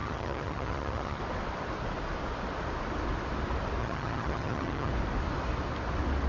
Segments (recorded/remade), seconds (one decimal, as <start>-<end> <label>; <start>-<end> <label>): 0.0-1.2 remade; 1.2-3.8 recorded; 3.8-4.9 remade; 4.9-6.3 recorded